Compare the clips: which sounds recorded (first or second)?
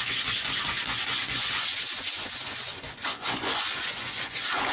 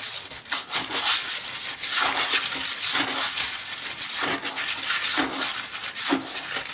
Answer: second